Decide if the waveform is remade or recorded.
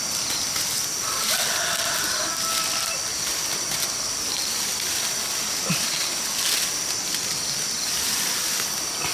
recorded